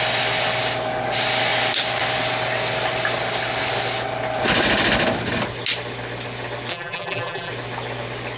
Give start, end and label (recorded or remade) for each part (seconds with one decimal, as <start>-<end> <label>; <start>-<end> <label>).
0.0-6.7 recorded; 6.7-7.5 remade; 7.5-8.4 recorded